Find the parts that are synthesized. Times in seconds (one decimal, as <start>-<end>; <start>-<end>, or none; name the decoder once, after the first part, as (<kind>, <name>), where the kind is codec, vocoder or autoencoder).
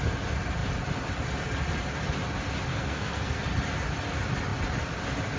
2.7-3.4 (codec, SNAC)